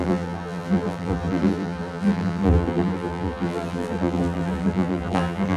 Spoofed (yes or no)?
yes